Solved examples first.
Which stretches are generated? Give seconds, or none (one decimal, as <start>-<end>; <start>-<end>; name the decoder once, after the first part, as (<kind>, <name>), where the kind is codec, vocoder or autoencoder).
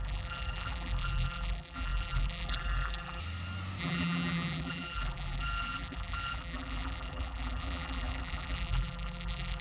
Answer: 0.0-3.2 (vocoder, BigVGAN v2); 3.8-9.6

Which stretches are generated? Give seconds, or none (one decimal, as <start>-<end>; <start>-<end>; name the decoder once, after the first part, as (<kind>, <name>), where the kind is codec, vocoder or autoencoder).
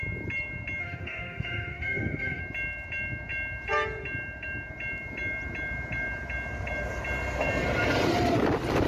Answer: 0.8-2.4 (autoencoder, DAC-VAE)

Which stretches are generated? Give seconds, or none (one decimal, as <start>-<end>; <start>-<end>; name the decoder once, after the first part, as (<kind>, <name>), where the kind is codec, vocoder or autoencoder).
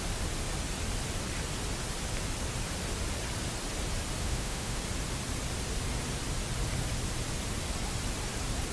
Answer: 4.2-4.8 (autoencoder, DAC-VAE)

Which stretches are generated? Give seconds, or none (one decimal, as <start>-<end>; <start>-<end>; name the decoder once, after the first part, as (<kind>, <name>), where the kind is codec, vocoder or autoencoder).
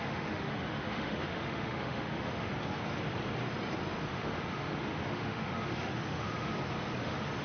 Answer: 0.0-2.5 (autoencoder, DAC-VAE); 4.1-6.5; 7.0-7.4